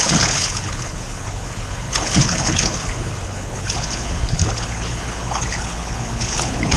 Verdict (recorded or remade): remade